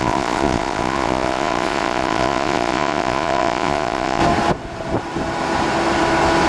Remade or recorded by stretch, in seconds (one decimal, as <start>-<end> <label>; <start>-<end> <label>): 0.0-4.2 remade; 4.2-6.5 recorded